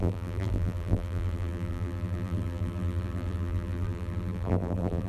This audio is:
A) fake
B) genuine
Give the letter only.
A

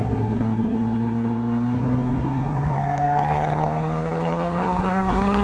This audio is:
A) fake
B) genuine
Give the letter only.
A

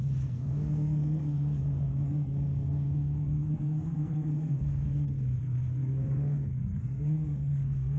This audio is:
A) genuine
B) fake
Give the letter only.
B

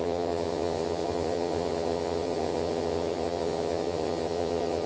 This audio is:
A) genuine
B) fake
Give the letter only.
B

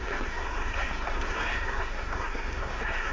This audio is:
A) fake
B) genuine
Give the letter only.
A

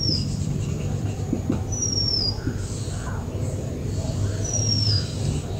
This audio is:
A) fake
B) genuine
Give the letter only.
A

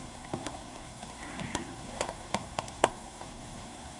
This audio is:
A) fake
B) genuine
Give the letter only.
A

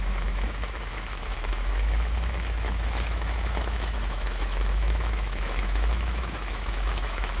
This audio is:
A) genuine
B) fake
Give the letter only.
B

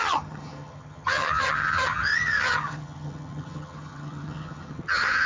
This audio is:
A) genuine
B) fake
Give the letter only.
B